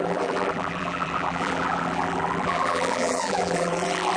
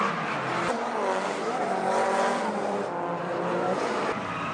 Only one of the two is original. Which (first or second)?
second